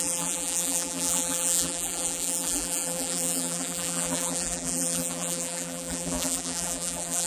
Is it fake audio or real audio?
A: fake